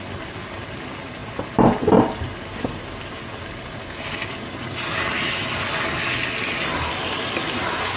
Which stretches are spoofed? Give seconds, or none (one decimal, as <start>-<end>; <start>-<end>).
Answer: none